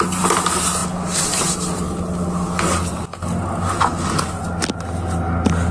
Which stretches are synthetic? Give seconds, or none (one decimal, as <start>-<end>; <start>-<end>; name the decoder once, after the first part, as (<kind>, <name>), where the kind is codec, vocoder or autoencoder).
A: none

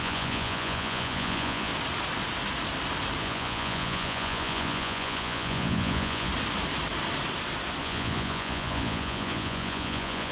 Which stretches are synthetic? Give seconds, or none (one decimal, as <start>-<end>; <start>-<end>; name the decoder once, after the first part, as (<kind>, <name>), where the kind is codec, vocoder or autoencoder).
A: 0.0-1.7 (vocoder, Vocos); 3.2-6.3; 7.8-10.3

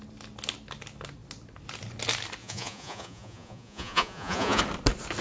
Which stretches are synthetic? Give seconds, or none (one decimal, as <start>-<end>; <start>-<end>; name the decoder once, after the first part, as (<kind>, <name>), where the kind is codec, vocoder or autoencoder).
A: 2.4-4.6 (vocoder, Vocos)

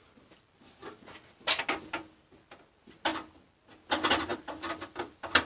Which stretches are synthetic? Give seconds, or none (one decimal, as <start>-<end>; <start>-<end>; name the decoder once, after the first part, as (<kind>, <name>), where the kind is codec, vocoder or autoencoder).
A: none

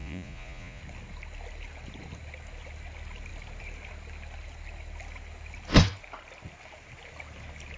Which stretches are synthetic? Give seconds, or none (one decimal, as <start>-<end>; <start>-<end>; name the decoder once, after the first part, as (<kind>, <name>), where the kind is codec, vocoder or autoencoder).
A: 0.0-0.8 (vocoder, Vocos)